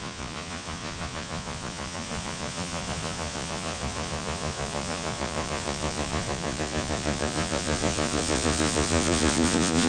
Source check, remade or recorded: remade